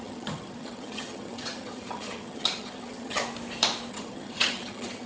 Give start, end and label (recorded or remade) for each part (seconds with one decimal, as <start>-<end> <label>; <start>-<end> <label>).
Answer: 0.0-3.2 remade; 3.2-3.9 recorded; 3.9-5.1 remade